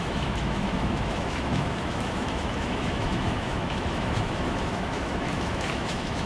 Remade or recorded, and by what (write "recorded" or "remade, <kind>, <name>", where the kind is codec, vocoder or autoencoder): remade, autoencoder, DAC-VAE